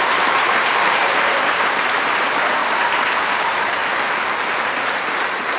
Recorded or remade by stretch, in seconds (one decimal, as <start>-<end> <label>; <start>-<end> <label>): 0.0-2.6 remade; 2.6-3.3 recorded; 3.3-3.8 remade; 3.8-4.5 recorded; 4.5-5.6 remade

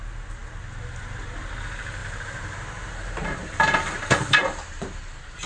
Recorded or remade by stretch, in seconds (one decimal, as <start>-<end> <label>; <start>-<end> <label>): 0.0-2.0 recorded; 2.0-5.5 remade

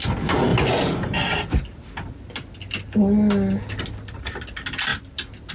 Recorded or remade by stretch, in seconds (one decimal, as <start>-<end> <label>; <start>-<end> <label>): 0.0-5.5 recorded

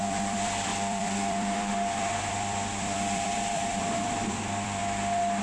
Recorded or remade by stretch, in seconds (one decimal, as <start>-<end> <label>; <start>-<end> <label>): 0.0-4.8 remade; 4.8-5.4 recorded